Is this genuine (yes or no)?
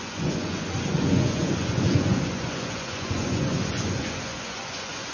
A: no